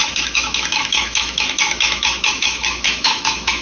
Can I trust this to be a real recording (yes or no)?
no